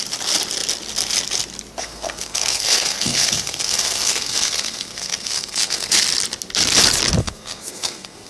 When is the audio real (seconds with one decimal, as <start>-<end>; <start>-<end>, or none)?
0.0-1.8; 6.0-7.2